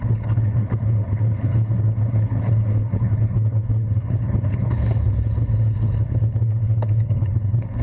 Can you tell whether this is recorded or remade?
remade